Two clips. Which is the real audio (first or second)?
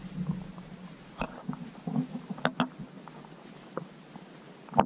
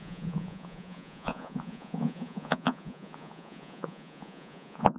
first